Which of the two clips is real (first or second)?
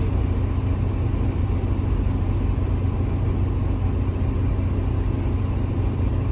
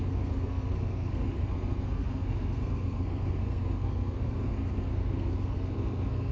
first